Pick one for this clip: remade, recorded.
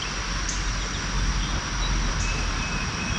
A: recorded